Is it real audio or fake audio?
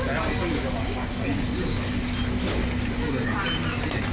real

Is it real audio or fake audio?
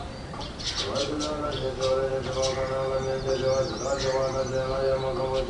real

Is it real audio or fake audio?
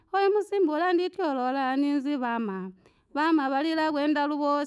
fake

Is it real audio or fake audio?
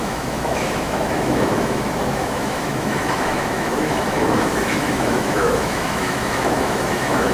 fake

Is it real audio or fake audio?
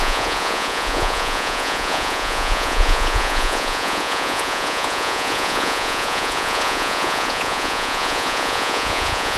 fake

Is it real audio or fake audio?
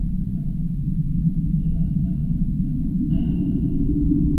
fake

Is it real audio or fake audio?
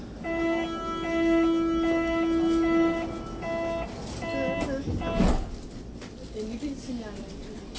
real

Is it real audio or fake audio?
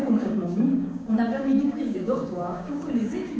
fake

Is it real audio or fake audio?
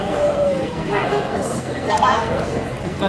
fake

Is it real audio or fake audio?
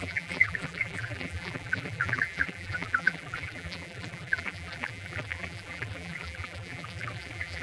fake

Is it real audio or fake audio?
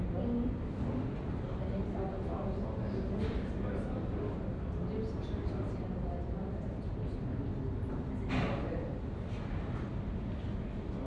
real